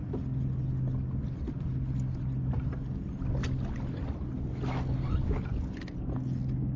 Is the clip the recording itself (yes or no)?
yes